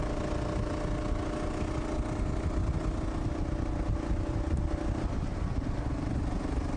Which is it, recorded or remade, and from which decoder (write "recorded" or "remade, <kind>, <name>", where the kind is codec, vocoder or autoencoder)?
recorded